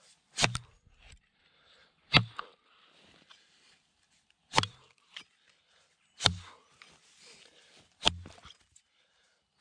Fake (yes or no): no